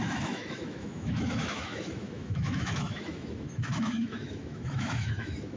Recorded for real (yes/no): no